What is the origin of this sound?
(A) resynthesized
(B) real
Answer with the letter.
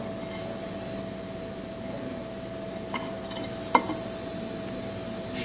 B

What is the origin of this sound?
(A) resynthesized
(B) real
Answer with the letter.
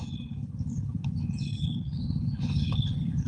A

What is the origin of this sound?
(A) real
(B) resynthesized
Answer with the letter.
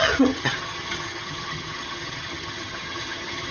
B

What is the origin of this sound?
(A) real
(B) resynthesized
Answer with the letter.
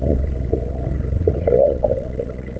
B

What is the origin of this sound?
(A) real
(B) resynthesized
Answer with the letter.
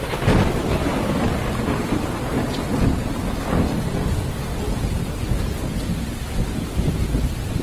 A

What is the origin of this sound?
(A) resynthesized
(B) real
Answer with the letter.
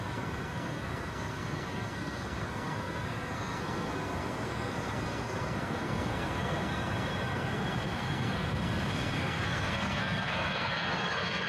A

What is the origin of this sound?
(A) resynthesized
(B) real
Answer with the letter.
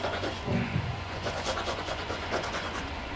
A